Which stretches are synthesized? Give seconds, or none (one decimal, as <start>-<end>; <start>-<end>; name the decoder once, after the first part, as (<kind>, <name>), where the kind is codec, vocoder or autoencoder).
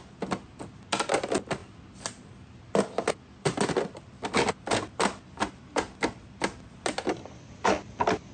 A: none